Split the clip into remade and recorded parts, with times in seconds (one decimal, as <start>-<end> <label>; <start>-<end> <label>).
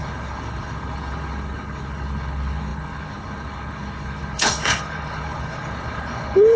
0.0-6.6 remade